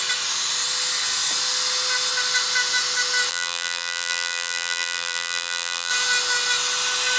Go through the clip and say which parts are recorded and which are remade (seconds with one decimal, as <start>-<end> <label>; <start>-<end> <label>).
0.0-3.3 recorded; 3.3-5.9 remade; 5.9-7.2 recorded